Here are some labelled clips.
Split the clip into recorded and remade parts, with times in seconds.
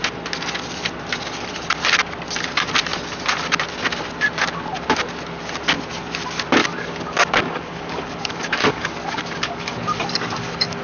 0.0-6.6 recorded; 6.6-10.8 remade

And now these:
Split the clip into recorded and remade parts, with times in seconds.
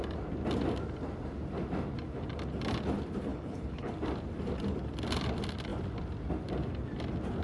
0.0-3.3 recorded; 3.3-3.9 remade; 3.9-7.4 recorded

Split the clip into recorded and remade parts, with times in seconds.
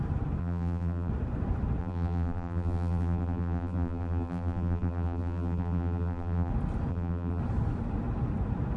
0.0-0.4 recorded; 0.4-1.1 remade; 1.1-1.8 recorded; 1.8-6.5 remade; 6.5-6.9 recorded; 6.9-7.4 remade; 7.4-8.8 recorded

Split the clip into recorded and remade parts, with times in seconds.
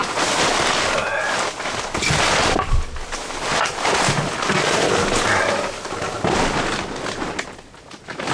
0.0-8.3 recorded